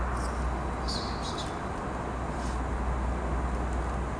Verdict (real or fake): real